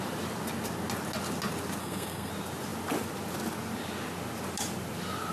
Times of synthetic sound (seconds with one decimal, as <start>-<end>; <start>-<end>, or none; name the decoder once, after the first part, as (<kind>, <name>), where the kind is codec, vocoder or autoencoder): 1.8-2.3 (codec, SNAC)